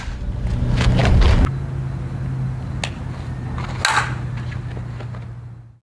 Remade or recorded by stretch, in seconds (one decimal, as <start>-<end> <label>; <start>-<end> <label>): 0.0-5.9 recorded